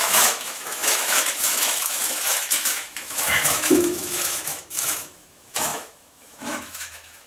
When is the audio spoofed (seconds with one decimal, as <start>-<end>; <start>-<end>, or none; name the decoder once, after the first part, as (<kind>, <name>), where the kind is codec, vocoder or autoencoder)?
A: 0.0-7.3 (autoencoder, DAC-VAE)